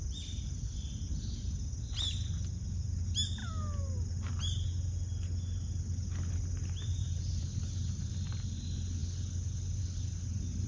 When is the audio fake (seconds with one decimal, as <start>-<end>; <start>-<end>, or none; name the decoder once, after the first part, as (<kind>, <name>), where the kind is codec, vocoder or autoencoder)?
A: none